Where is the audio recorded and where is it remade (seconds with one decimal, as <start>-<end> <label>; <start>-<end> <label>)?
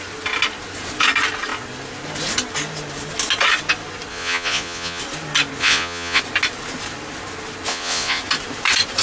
0.0-4.1 recorded; 4.1-5.0 remade; 5.0-5.6 recorded; 5.6-6.2 remade; 6.2-7.7 recorded; 7.7-8.2 remade; 8.2-9.0 recorded